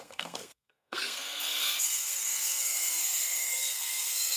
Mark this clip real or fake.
fake